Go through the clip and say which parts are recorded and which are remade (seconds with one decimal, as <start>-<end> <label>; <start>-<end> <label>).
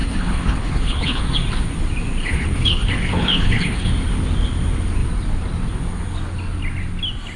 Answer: 0.0-1.2 remade; 1.2-2.2 recorded; 2.2-3.9 remade; 3.9-7.4 recorded